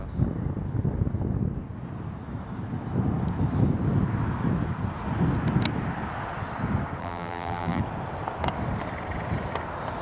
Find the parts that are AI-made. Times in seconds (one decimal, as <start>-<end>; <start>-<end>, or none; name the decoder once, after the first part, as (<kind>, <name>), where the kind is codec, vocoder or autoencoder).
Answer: 7.0-7.8 (vocoder, BigVGAN v2)